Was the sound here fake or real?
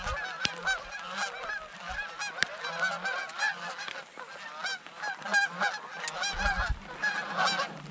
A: real